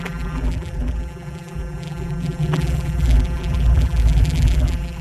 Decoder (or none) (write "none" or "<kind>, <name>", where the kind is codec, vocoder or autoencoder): vocoder, BigVGAN v2